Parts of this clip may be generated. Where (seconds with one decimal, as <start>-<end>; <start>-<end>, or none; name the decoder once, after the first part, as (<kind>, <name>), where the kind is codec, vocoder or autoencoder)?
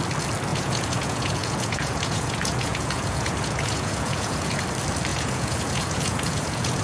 0.5-4.6 (vocoder, Vocos); 5.1-6.8